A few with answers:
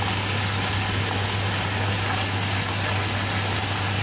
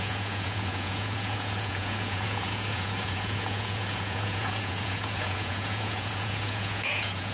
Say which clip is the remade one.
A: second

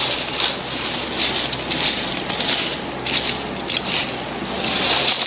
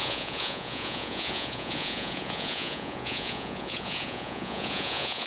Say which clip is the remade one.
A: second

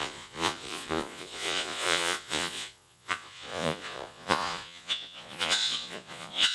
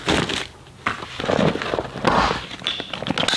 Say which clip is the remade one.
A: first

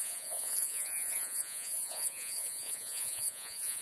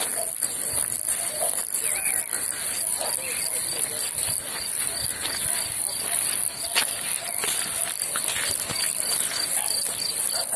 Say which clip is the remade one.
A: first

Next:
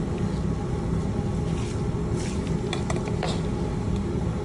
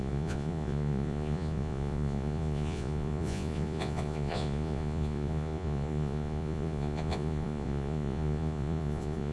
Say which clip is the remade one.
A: second